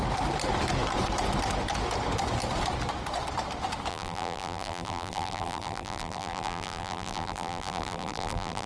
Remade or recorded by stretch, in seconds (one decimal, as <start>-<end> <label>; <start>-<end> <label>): 0.0-3.9 recorded; 3.9-8.7 remade